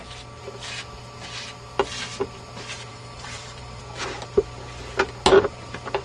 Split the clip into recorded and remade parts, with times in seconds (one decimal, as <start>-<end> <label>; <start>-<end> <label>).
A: 0.0-2.9 recorded; 2.9-3.8 remade; 3.8-6.0 recorded